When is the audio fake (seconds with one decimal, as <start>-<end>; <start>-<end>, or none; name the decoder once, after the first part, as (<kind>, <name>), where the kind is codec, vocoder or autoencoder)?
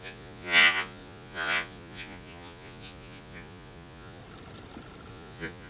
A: 0.0-4.2 (vocoder, Vocos); 5.1-5.7